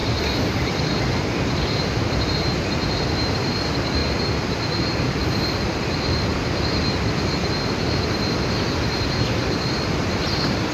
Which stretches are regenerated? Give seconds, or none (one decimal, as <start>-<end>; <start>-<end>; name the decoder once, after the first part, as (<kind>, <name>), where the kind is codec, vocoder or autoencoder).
0.0-4.0 (vocoder, BigVGAN v2); 5.0-6.3; 8.5-10.7